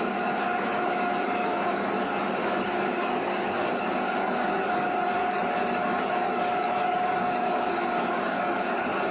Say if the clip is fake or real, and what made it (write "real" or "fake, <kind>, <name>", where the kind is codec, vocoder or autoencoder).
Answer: fake, codec, DAC